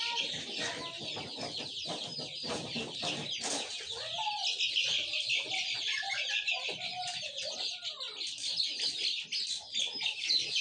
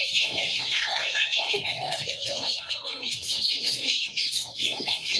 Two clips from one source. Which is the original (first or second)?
first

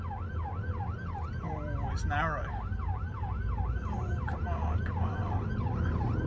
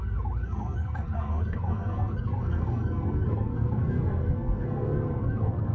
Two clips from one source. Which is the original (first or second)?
first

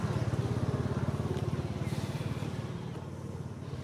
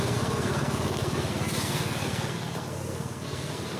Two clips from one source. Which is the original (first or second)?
first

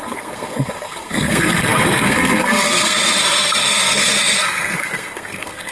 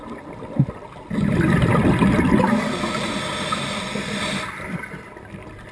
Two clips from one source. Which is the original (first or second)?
second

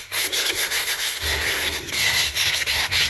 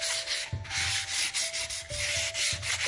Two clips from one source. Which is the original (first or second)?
second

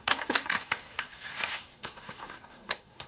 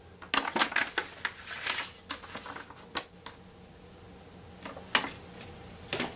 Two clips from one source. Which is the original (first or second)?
second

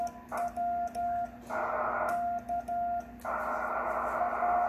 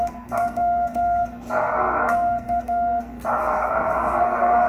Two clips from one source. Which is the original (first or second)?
first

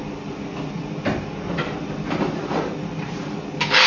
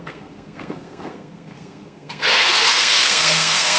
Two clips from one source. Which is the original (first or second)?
first